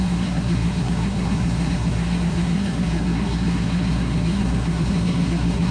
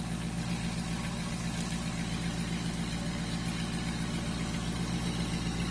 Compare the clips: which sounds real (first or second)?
second